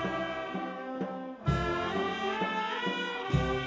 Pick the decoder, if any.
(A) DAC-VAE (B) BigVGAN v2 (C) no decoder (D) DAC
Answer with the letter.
C